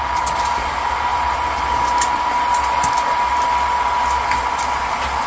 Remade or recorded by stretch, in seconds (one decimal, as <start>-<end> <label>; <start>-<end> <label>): 0.0-5.3 recorded